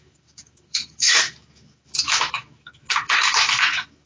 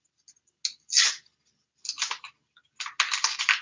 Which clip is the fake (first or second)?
first